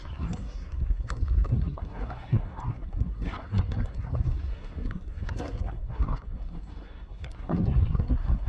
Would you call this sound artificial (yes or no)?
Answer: yes